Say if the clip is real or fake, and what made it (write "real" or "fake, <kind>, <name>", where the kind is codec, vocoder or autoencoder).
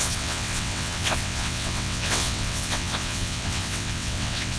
fake, vocoder, WaveNeXt